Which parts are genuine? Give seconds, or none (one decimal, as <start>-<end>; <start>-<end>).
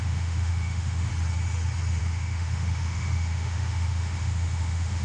1.1-2.0